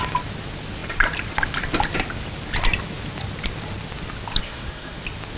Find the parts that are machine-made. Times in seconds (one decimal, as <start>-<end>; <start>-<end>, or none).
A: 4.4-5.0